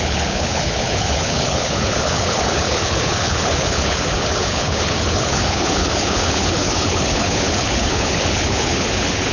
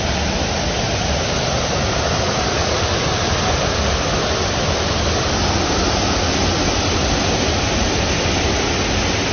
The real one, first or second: second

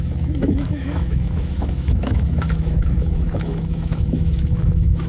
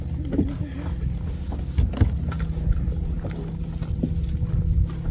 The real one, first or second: second